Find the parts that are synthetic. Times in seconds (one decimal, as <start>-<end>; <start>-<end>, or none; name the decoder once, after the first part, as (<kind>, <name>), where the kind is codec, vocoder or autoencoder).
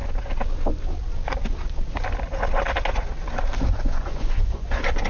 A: 3.7-5.1 (vocoder, Vocos)